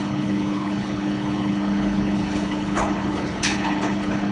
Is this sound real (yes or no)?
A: no